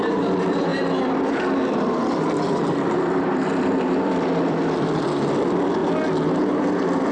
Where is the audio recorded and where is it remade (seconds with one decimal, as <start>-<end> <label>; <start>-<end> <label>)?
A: 0.0-5.8 remade; 5.8-6.5 recorded; 6.5-7.1 remade